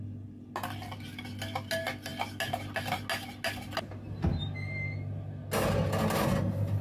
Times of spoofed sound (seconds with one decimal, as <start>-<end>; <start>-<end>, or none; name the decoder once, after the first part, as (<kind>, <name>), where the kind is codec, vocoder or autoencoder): none